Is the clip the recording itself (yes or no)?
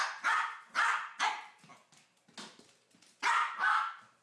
yes